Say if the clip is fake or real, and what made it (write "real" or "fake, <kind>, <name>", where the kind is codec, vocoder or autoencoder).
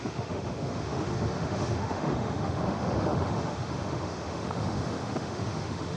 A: fake, autoencoder, DAC-VAE